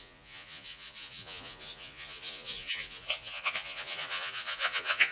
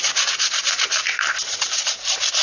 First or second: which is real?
second